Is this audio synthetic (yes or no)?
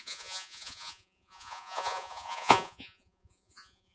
yes